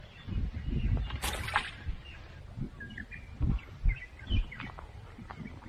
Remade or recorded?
recorded